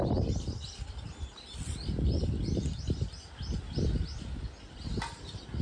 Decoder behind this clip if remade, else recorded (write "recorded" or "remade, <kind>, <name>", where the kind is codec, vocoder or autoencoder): recorded